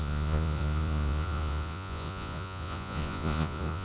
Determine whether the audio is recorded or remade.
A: remade